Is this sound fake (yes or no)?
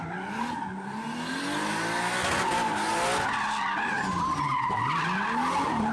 no